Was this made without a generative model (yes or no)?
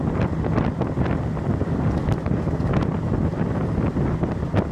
yes